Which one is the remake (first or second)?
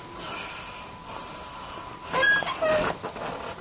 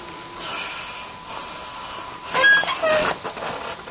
first